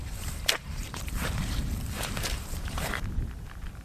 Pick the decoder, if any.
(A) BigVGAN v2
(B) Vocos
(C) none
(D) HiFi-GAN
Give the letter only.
A